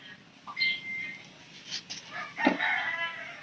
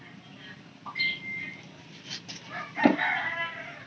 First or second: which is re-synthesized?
second